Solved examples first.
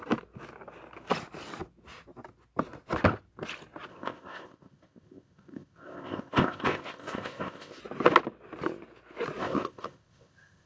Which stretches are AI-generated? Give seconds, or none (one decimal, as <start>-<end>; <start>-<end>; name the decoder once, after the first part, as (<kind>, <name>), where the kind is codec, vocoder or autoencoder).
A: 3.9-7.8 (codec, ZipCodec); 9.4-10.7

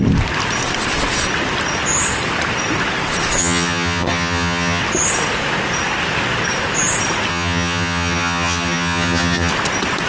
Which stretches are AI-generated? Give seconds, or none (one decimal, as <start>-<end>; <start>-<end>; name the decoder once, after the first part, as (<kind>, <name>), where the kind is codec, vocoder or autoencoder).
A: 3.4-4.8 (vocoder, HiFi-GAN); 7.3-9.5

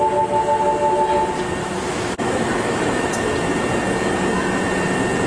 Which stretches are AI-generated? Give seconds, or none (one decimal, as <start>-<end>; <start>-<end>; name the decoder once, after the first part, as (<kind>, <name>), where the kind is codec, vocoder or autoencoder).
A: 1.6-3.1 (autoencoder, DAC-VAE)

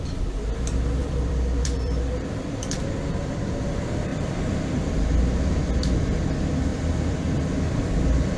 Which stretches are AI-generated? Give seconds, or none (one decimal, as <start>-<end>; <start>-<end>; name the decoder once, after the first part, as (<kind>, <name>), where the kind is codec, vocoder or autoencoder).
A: 1.0-3.6 (vocoder, BigVGAN v2); 4.1-4.9; 6.7-8.4